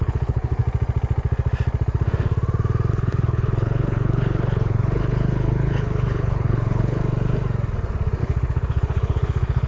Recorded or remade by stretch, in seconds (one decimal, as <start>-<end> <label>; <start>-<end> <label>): 0.0-0.6 remade; 0.6-2.9 recorded; 2.9-7.0 remade; 7.0-8.2 recorded; 8.2-9.7 remade